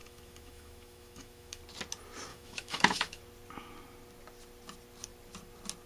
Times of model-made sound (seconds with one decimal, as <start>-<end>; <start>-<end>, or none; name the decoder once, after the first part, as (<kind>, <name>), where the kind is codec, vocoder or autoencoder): 0.0-1.6 (autoencoder, DAC-VAE); 2.3-3.2